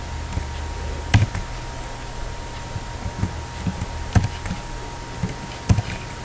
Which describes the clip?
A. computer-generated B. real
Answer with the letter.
B